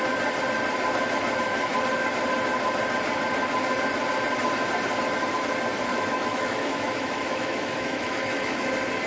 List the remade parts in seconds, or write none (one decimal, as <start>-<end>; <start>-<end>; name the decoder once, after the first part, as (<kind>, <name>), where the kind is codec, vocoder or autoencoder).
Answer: 5.9-8.7 (autoencoder, DAC-VAE)

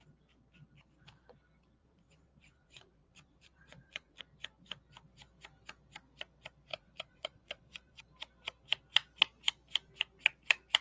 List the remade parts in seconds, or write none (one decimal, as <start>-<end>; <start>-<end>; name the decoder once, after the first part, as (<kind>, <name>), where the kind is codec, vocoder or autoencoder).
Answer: 1.8-4.2 (vocoder, Vocos); 6.7-8.0

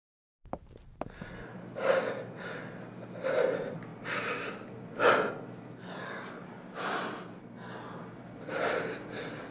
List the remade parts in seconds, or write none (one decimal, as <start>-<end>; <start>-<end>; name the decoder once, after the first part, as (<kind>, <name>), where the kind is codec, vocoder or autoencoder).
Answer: none

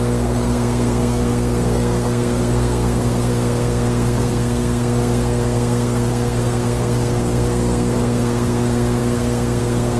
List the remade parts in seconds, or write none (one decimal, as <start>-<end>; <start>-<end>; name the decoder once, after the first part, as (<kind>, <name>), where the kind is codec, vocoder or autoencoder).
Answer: 0.0-10.0 (codec, SNAC)

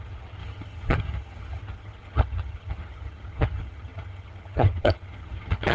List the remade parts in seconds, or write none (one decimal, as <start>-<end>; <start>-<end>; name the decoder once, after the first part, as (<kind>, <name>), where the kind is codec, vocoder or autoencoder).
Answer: 0.0-5.7 (vocoder, HiFi-GAN)

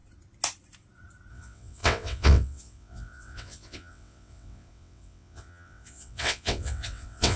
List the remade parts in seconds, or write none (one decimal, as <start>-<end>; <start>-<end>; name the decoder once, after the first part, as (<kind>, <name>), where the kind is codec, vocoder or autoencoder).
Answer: 1.3-7.4 (vocoder, WaveNeXt)